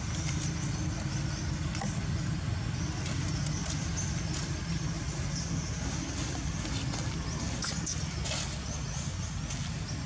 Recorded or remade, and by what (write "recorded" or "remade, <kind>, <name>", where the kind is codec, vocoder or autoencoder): recorded